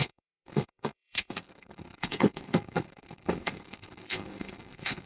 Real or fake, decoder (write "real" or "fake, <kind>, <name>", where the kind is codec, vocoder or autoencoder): fake, codec, SNAC